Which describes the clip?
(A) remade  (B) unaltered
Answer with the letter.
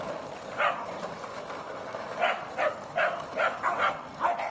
B